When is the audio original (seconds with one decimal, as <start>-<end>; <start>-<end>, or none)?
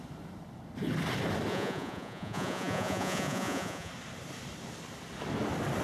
0.0-1.5; 3.9-5.8